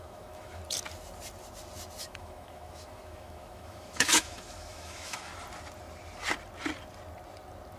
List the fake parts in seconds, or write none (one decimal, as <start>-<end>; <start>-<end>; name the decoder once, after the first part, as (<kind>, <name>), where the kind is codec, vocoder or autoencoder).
0.0-0.6 (autoencoder, DAC-VAE); 2.0-5.3